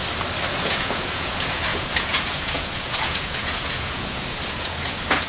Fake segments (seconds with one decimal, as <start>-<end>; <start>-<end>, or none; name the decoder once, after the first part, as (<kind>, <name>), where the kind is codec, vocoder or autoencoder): 0.6-5.3 (vocoder, Vocos)